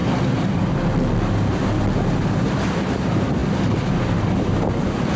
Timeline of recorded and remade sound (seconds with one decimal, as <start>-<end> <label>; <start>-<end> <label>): 0.0-5.2 recorded